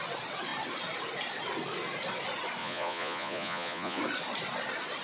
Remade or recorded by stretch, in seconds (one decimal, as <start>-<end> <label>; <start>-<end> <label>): 0.0-2.6 recorded; 2.6-4.0 remade; 4.0-5.0 recorded